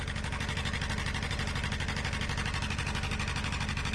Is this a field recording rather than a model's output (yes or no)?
yes